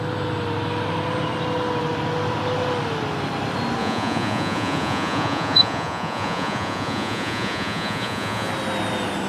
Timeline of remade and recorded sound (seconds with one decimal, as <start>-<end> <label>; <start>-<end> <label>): 0.0-3.8 recorded; 3.8-8.5 remade; 8.5-9.3 recorded